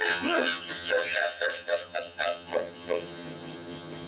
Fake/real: fake